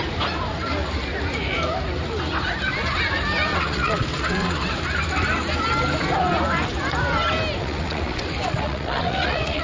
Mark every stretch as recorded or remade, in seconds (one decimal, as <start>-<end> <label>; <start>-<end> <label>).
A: 0.0-3.5 recorded; 3.5-4.7 remade; 4.7-7.6 recorded; 7.6-9.6 remade